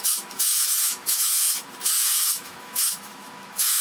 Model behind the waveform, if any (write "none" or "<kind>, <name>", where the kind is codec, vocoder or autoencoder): autoencoder, DAC-VAE